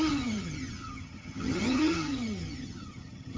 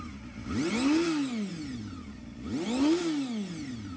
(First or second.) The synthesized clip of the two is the first